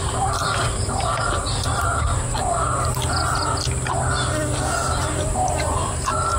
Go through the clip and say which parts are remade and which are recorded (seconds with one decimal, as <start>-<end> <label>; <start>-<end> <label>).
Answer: 0.0-1.5 remade; 1.5-5.3 recorded; 5.3-6.4 remade